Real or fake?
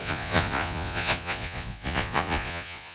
fake